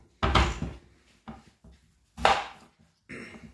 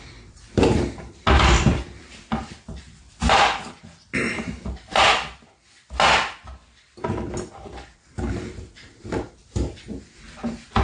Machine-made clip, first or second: second